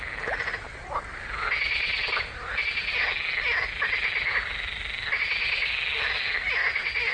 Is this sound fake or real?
real